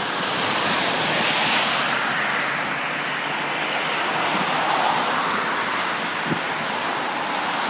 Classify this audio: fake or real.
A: real